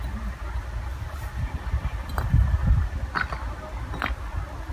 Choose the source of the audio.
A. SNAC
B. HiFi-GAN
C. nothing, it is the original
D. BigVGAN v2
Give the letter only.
C